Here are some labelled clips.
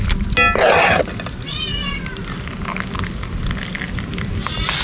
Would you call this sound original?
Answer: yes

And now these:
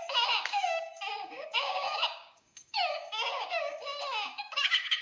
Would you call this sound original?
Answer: no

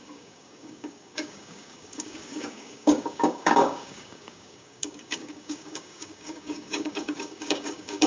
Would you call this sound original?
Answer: no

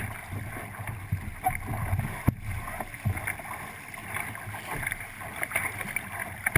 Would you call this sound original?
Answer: yes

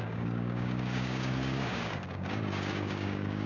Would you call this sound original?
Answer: no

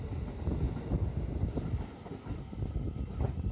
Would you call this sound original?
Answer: yes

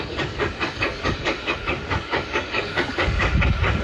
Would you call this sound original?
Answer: no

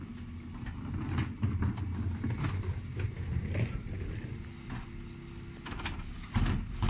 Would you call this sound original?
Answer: yes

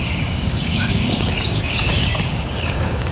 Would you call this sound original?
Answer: no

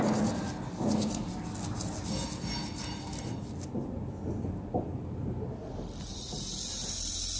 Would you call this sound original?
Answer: yes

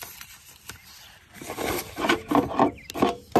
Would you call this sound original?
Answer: yes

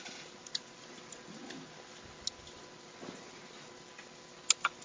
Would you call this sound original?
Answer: yes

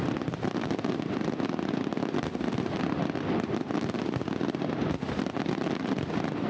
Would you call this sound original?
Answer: yes